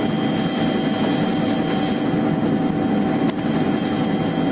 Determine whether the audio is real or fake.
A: real